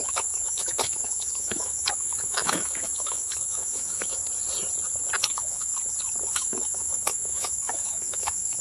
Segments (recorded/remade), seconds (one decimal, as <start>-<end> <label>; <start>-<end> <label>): 0.0-4.2 remade; 4.2-5.2 recorded; 5.2-5.7 remade; 5.7-6.3 recorded; 6.3-8.6 remade